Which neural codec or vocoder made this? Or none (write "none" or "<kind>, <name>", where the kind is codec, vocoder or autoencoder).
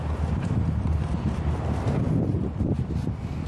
vocoder, BigVGAN v2